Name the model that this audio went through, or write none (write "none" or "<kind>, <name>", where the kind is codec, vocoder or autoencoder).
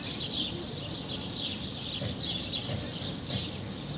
none